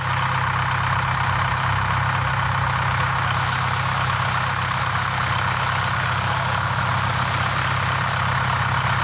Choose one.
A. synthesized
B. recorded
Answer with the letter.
B